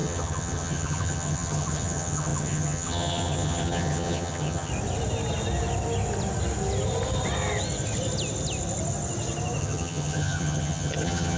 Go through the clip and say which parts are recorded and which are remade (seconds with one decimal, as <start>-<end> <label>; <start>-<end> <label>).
0.0-4.7 remade; 4.7-9.6 recorded; 9.6-11.4 remade